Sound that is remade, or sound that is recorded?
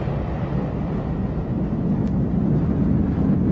recorded